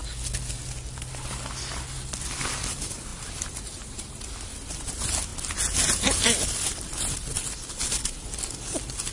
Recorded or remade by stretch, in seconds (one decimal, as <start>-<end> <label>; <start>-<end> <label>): 0.0-2.6 recorded; 2.6-5.3 remade; 5.3-8.3 recorded; 8.3-9.1 remade